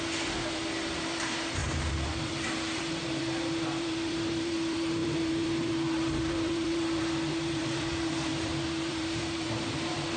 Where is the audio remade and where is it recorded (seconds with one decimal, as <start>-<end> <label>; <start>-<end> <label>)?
0.0-10.2 remade